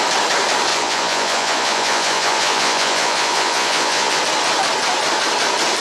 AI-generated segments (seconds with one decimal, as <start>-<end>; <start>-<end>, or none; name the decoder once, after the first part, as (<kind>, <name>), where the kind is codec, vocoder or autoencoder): 0.7-4.2 (vocoder, Vocos)